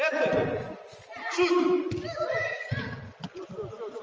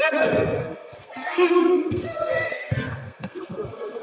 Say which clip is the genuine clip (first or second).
first